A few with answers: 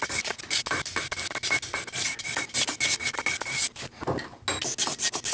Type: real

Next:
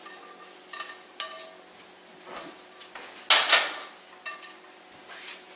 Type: real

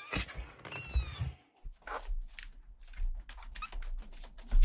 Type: real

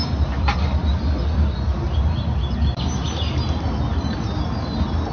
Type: real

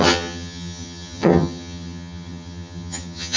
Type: fake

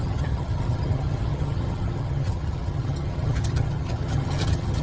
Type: fake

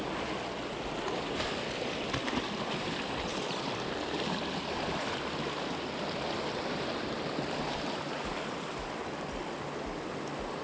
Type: real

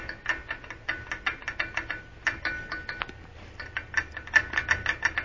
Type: real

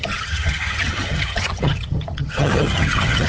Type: fake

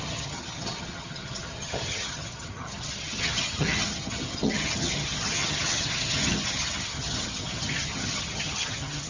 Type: fake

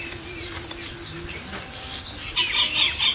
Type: real